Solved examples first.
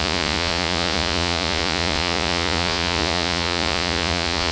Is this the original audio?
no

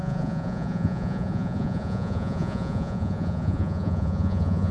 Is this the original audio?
no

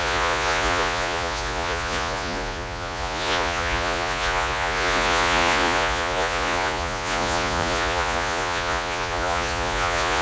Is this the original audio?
no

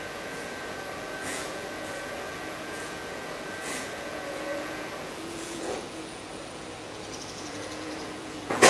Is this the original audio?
no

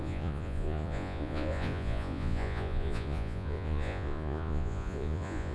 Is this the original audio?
no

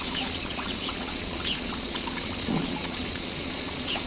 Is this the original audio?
no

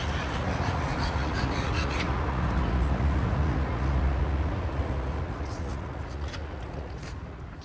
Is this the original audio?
no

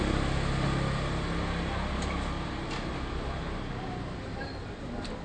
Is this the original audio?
yes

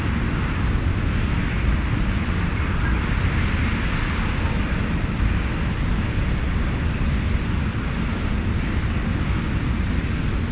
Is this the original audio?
yes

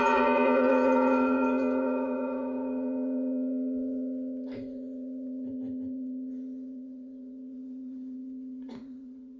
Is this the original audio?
no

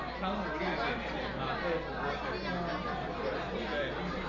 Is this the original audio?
yes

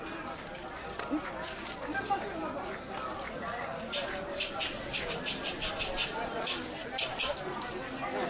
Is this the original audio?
yes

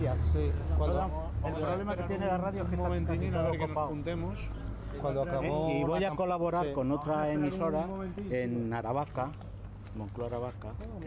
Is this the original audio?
yes